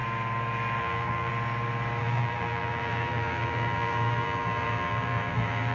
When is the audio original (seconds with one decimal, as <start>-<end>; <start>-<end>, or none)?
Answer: 0.0-0.8; 1.3-2.0